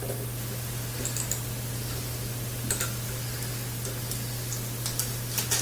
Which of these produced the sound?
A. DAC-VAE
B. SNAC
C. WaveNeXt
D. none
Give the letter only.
D